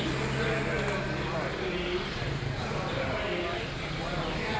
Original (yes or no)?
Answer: yes